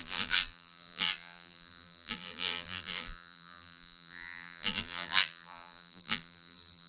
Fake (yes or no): yes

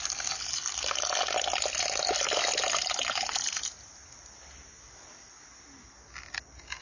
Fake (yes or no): no